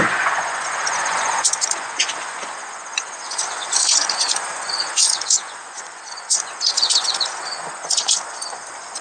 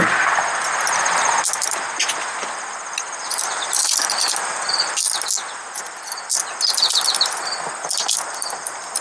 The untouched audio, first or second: second